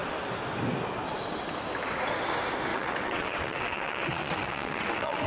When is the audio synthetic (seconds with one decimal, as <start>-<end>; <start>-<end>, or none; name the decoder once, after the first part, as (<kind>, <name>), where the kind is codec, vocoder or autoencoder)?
2.7-5.3 (vocoder, WaveNeXt)